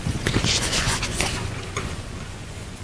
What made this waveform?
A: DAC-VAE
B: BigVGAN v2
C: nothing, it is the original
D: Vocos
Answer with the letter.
D